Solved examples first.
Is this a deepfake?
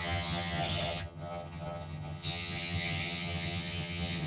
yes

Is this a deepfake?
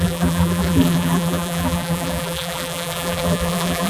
yes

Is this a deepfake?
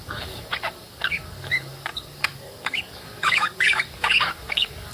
yes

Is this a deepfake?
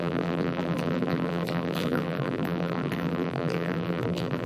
yes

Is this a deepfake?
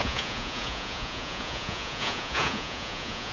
yes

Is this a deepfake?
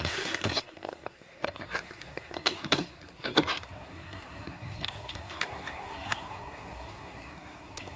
yes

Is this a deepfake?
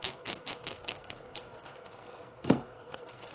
yes